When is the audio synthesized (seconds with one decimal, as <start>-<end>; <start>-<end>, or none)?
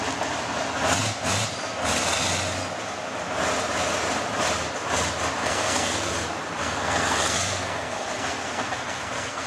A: 5.4-6.1; 6.6-9.5